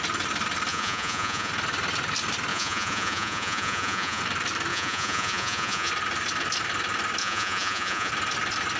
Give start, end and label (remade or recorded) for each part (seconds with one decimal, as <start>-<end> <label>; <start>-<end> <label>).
0.0-0.7 recorded; 0.7-1.5 remade; 1.5-2.5 recorded; 2.5-4.2 remade; 4.2-4.7 recorded; 4.7-5.9 remade; 5.9-7.2 recorded; 7.2-8.1 remade; 8.1-8.8 recorded